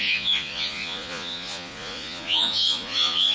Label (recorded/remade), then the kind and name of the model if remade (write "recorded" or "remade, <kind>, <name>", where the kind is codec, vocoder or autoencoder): remade, vocoder, Vocos